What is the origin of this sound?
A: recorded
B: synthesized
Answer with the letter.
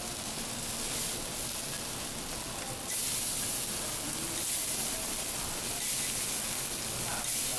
A